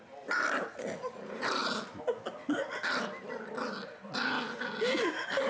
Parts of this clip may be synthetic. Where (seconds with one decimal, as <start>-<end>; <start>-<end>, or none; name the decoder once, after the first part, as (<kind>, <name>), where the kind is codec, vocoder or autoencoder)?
none